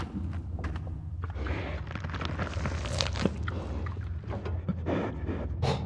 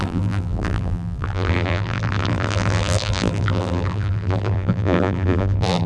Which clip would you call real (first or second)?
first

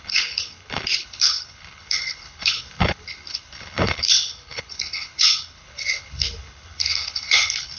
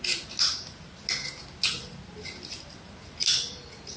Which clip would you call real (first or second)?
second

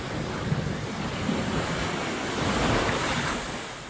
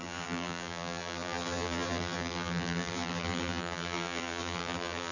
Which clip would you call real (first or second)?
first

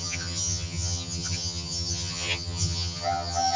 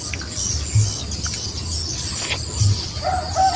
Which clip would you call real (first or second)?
second